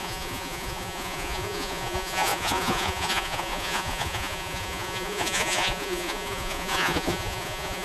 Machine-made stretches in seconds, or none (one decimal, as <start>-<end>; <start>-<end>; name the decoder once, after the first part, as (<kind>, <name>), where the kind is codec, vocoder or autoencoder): 0.0-7.8 (vocoder, Vocos)